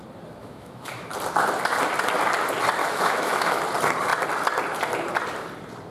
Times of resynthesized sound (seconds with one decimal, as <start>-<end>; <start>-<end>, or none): 0.4-1.1; 2.8-3.6